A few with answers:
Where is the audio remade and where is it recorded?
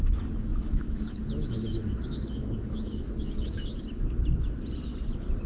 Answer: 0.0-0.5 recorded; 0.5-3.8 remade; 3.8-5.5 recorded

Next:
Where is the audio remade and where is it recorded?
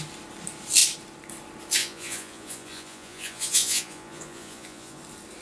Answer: 0.0-1.8 recorded; 1.8-5.0 remade; 5.0-5.4 recorded